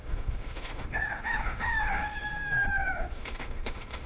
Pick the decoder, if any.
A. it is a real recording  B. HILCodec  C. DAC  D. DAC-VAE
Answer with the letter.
D